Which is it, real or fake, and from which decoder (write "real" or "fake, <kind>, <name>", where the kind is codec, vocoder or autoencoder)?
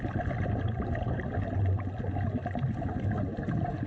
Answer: real